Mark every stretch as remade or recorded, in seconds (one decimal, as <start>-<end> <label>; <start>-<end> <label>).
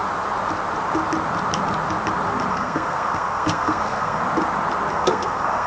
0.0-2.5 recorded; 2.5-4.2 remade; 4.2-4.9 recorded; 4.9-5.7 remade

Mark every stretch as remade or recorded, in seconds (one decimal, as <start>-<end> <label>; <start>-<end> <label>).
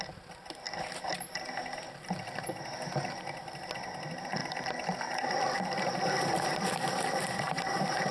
0.0-1.1 remade; 1.1-3.8 recorded; 3.8-8.1 remade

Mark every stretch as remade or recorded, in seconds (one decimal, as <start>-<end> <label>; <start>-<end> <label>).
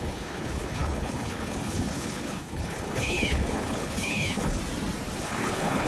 0.0-4.6 remade; 4.6-5.2 recorded; 5.2-5.9 remade